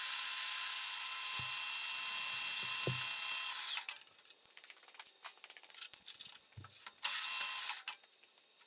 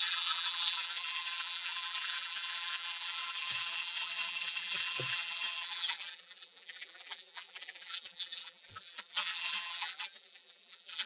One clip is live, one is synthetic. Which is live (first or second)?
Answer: first